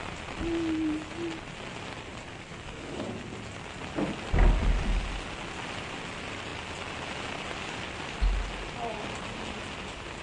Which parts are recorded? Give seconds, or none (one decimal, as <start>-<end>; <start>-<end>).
0.0-2.5; 3.0-10.2